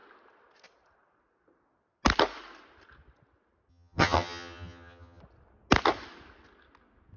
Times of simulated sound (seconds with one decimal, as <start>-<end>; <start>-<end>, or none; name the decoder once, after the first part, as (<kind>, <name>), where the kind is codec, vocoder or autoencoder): 3.7-5.2 (vocoder, HiFi-GAN)